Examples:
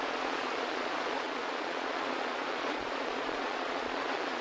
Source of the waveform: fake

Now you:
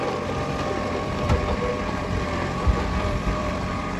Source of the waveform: fake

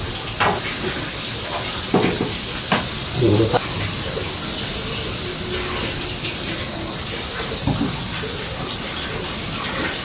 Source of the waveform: real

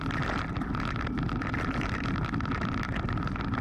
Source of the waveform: real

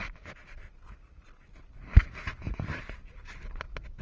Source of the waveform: real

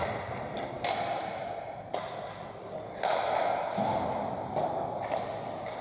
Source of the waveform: real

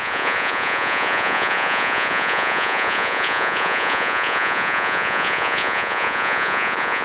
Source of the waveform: fake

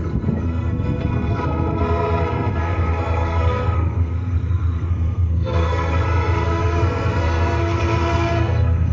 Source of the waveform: fake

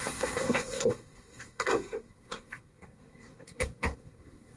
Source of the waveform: fake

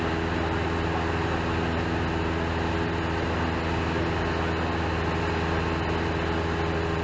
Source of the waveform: real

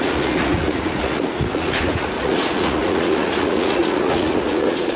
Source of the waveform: fake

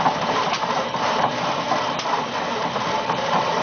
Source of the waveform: fake